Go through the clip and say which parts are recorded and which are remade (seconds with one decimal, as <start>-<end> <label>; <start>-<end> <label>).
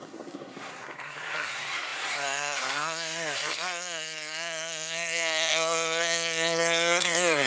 0.0-7.5 remade